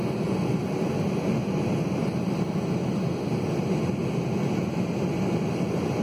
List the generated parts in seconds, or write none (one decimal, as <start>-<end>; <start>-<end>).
none